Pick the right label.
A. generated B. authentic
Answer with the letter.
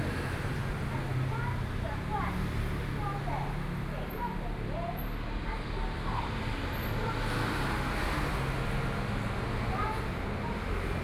B